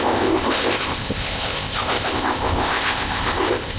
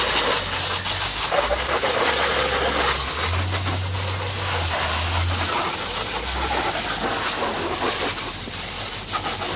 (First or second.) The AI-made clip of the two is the first